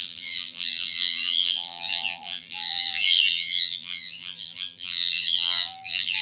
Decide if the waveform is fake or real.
fake